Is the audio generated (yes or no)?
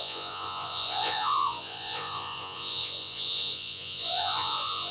yes